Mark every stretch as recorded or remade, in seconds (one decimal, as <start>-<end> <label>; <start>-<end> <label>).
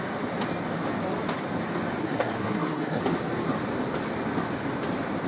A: 0.0-2.0 recorded; 2.0-3.0 remade; 3.0-5.3 recorded